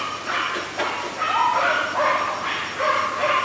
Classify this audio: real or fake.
real